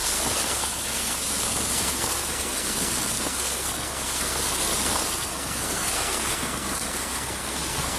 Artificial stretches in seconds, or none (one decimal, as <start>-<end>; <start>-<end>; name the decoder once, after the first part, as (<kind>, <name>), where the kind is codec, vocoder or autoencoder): 0.0-8.0 (codec, SNAC)